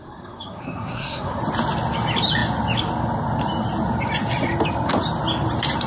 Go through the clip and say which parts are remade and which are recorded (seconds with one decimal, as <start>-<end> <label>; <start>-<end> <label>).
0.0-1.4 remade; 1.4-5.9 recorded